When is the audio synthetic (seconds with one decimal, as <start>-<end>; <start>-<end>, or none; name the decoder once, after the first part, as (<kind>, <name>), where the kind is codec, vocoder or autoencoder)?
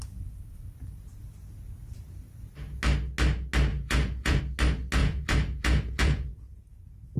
3.7-4.4 (vocoder, Vocos); 5.0-7.2